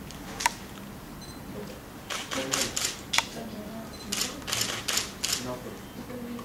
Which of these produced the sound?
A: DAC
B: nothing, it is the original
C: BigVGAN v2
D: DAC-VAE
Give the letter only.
B